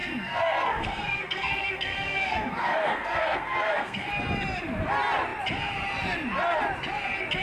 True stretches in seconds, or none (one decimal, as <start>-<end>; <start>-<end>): 4.1-7.4